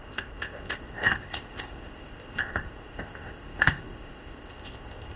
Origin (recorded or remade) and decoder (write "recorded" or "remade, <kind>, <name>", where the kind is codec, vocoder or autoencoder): remade, codec, ZipCodec